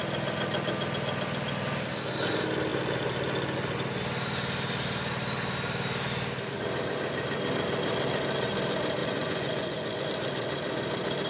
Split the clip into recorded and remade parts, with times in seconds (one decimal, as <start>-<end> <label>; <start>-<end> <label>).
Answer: 0.0-9.0 recorded; 9.0-10.1 remade; 10.1-11.3 recorded